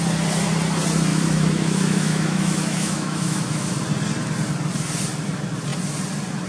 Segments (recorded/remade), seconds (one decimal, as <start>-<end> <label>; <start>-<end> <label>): 0.0-1.1 recorded; 1.1-3.7 remade; 3.7-6.5 recorded